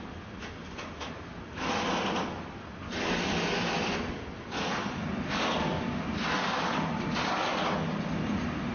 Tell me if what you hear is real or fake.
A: real